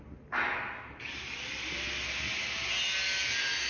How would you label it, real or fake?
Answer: real